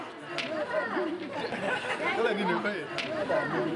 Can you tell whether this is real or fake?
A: real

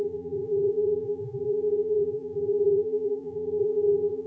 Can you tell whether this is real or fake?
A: fake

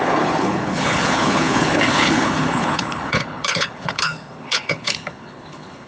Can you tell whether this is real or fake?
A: fake